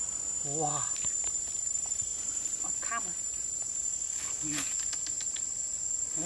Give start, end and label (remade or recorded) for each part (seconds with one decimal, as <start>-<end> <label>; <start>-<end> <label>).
0.0-6.3 recorded